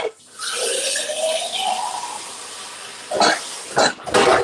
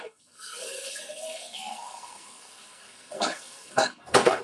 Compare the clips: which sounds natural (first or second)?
first